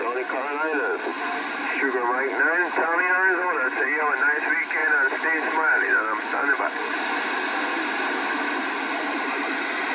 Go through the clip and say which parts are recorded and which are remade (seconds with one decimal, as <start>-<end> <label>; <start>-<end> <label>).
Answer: 0.0-9.9 recorded